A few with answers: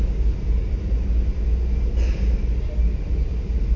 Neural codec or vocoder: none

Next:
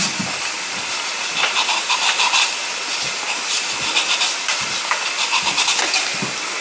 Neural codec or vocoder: none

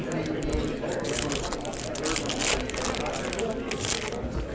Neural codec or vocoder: none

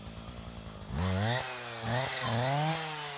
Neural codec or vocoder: none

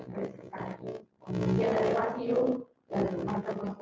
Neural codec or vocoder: vocoder, Vocos